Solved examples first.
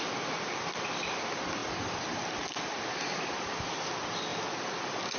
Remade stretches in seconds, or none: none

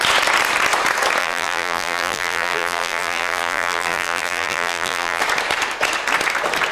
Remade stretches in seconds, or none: 1.2-5.2 (vocoder, BigVGAN v2)

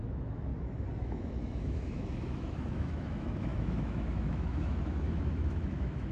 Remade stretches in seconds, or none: 0.0-0.5 (autoencoder, DAC-VAE); 1.0-6.1

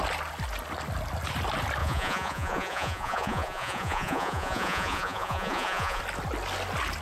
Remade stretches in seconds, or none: 1.8-6.0 (vocoder, Vocos)

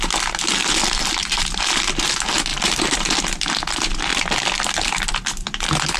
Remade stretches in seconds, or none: 0.6-1.9 (vocoder, BigVGAN v2); 2.5-3.2

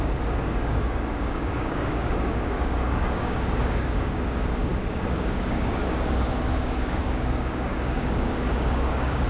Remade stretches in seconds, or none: 0.0-9.3 (codec, DAC)